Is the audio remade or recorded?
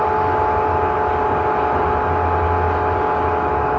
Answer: recorded